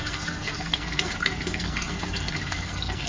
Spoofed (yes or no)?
yes